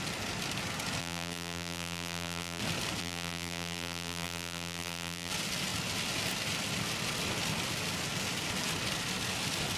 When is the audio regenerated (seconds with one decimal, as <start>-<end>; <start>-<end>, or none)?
1.0-2.6; 3.0-5.3